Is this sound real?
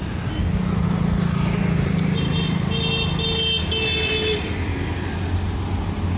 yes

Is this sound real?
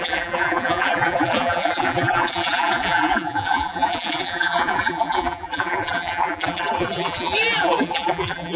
no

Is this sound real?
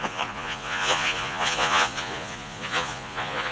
no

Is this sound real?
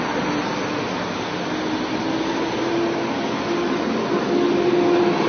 yes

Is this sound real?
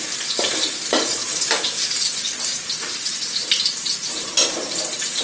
no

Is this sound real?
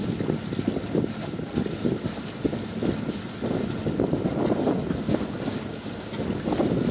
yes